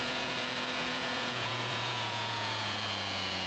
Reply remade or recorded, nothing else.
remade